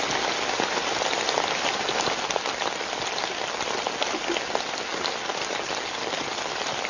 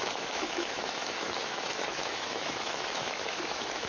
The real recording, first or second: first